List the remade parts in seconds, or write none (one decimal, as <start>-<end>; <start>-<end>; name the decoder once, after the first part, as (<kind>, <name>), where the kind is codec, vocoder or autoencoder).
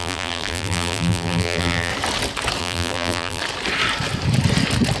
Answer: 0.0-1.9 (vocoder, BigVGAN v2); 2.6-3.4